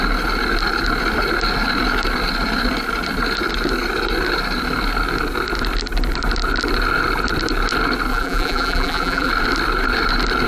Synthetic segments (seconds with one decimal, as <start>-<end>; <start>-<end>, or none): 8.1-9.3